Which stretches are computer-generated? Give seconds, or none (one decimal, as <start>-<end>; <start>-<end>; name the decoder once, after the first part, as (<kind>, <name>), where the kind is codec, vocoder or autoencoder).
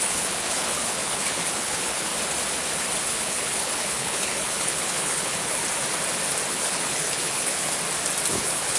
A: 0.0-2.1 (codec, HILCodec); 3.0-5.6; 6.5-7.7; 8.3-8.8